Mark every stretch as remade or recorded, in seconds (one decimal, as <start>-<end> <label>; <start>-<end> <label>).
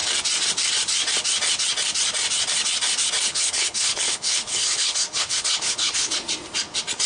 0.0-3.3 recorded; 3.3-6.1 remade; 6.1-7.1 recorded